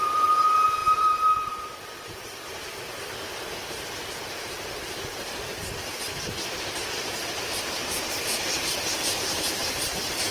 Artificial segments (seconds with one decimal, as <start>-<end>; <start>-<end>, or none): 0.8-2.7; 3.6-5.6; 6.8-9.8